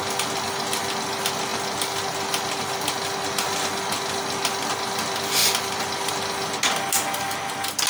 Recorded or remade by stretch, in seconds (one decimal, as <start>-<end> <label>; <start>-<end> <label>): 0.0-7.9 recorded